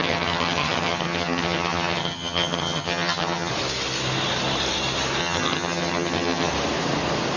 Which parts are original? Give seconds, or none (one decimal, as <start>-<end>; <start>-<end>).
3.5-5.2; 6.5-7.4